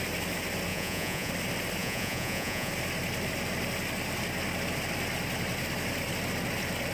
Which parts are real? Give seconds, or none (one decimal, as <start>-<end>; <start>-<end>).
0.0-0.7; 1.3-1.8; 2.7-6.9